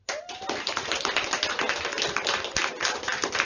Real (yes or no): yes